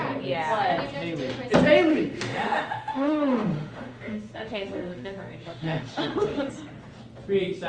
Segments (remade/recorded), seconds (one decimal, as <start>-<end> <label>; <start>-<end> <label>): 0.0-1.9 recorded; 1.9-6.5 remade; 6.5-7.7 recorded